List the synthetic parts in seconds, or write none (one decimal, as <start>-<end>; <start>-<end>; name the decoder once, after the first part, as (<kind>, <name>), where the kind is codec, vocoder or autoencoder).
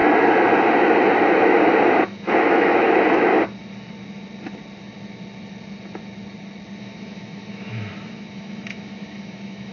2.0-3.3 (autoencoder, DAC-VAE); 6.8-9.7